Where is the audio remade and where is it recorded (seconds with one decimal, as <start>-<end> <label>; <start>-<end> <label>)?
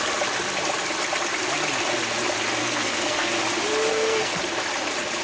0.0-2.6 recorded; 2.6-3.3 remade; 3.3-3.9 recorded; 3.9-4.4 remade; 4.4-5.2 recorded